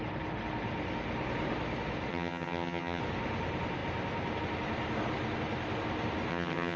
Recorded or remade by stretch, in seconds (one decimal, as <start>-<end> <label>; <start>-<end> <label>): 0.0-2.1 recorded; 2.1-3.0 remade; 3.0-6.3 recorded; 6.3-6.8 remade